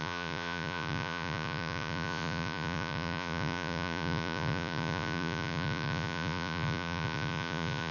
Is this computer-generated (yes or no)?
yes